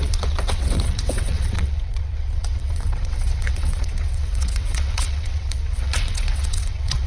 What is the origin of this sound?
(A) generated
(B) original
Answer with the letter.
A